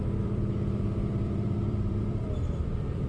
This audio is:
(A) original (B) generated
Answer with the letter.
B